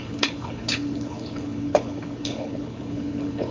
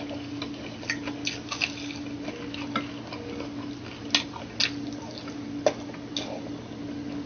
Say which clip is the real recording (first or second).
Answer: second